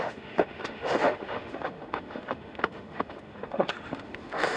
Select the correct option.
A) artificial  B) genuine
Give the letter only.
A